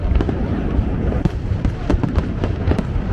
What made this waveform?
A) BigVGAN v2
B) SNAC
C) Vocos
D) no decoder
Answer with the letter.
A